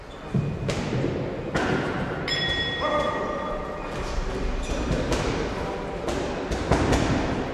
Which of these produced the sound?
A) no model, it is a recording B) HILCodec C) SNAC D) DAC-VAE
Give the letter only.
A